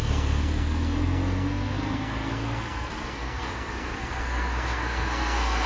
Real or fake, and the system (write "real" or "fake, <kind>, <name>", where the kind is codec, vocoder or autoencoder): fake, codec, SNAC